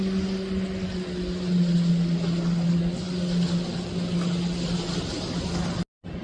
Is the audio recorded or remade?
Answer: recorded